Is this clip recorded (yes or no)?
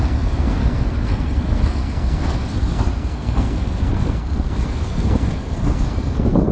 no